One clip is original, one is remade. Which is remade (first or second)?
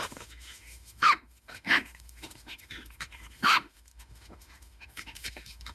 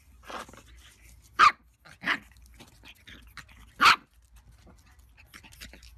first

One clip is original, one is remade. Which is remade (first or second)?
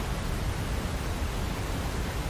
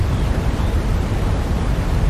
second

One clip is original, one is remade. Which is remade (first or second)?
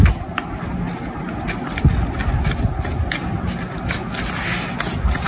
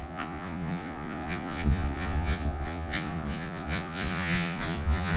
second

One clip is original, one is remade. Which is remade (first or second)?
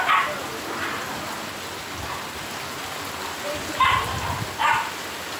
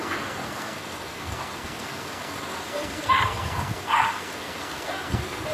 second